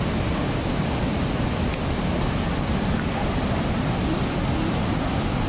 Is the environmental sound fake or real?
real